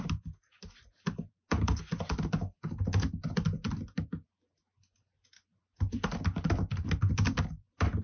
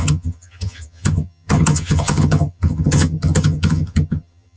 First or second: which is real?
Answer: first